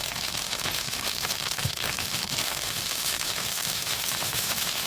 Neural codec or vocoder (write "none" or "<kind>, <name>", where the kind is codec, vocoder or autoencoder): autoencoder, DAC-VAE